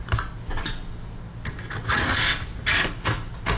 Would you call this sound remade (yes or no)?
no